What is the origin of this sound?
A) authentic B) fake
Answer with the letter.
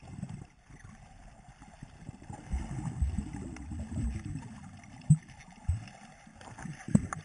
A